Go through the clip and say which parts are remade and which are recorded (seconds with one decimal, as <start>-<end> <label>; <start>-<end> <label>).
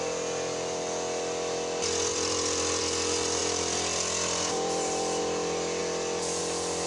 0.0-2.1 recorded; 2.1-2.8 remade; 2.8-3.4 recorded; 3.4-5.2 remade; 5.2-5.8 recorded; 5.8-6.4 remade; 6.4-6.9 recorded